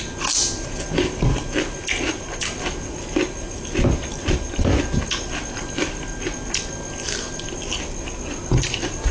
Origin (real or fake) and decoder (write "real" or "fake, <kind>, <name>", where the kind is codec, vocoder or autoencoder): real